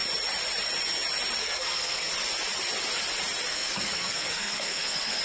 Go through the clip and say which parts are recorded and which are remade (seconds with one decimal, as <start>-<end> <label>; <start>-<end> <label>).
0.0-1.4 recorded; 1.4-2.1 remade; 2.1-3.5 recorded; 3.5-5.2 remade